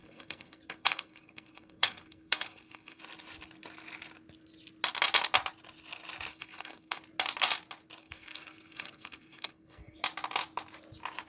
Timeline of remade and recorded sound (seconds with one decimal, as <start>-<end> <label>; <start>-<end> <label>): 0.0-3.0 remade; 3.0-6.3 recorded; 6.3-7.0 remade; 7.0-8.0 recorded; 8.0-10.0 remade; 10.0-11.3 recorded